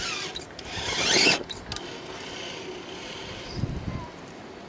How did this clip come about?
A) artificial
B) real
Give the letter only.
B